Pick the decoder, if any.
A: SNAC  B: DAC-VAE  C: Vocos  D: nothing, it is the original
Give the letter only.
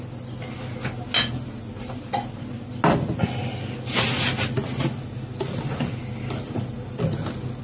D